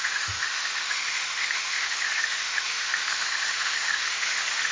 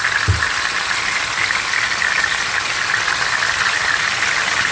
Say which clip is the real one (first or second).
second